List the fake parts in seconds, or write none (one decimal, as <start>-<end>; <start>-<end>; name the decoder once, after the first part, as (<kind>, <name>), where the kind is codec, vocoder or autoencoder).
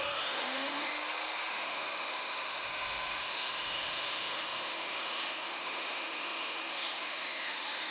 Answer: 0.0-0.9 (autoencoder, DAC-VAE); 1.5-7.9